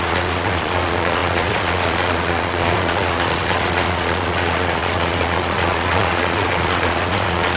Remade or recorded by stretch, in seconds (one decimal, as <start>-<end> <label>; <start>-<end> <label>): 0.0-7.6 remade